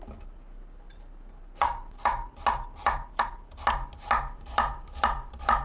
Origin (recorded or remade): recorded